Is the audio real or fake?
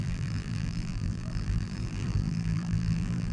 fake